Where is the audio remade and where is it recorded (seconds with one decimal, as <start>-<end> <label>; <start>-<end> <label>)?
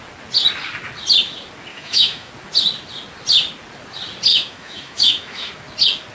0.0-1.7 recorded; 1.7-2.3 remade; 2.3-4.3 recorded; 4.3-5.5 remade; 5.5-6.1 recorded